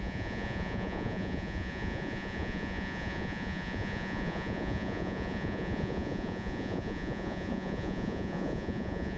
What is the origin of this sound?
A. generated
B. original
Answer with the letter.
A